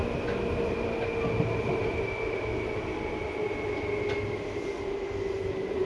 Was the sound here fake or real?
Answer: real